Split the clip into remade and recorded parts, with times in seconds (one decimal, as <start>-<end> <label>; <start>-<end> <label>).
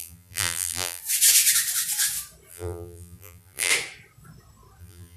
0.0-1.0 remade; 1.0-2.5 recorded; 2.5-3.7 remade; 3.7-4.8 recorded; 4.8-5.2 remade